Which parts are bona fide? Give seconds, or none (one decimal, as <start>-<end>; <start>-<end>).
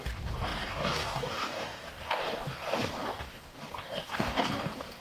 none